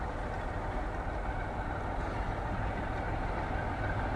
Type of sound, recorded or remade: recorded